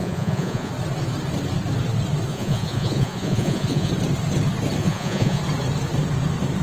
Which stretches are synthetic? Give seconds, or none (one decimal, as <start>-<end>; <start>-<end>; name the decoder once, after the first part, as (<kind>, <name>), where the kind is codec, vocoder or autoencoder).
0.0-0.7 (vocoder, Vocos); 2.3-3.9; 4.8-5.4

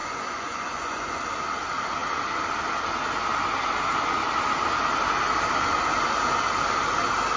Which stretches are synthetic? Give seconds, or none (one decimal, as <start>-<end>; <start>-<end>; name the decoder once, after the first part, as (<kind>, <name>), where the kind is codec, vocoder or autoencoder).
0.0-1.2 (vocoder, Vocos)